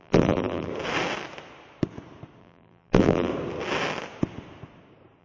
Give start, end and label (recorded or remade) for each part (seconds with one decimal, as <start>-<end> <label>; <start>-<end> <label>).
0.0-0.7 remade; 0.7-2.4 recorded; 2.4-3.3 remade; 3.3-5.2 recorded

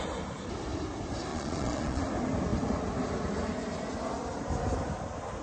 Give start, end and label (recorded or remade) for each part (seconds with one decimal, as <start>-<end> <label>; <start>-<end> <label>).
0.0-1.3 recorded; 1.3-2.0 remade; 2.0-5.4 recorded

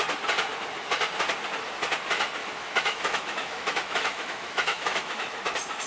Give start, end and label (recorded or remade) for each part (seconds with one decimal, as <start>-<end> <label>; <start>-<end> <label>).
0.0-2.4 recorded; 2.4-5.4 remade; 5.4-5.9 recorded

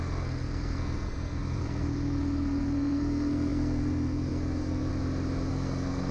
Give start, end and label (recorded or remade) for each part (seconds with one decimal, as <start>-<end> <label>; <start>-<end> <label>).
0.0-4.9 remade; 4.9-5.5 recorded; 5.5-6.1 remade